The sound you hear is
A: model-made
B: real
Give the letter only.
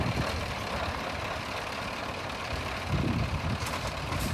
A